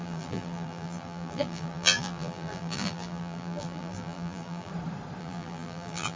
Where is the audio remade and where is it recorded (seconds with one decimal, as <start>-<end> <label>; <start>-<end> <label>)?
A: 0.0-4.7 remade; 4.7-5.2 recorded; 5.2-6.2 remade